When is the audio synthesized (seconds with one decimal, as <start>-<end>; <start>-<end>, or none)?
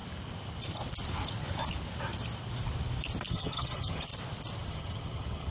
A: 3.3-4.1; 4.7-5.5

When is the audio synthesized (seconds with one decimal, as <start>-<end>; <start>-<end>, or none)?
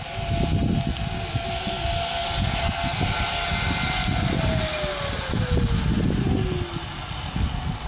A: none